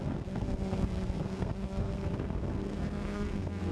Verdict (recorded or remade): remade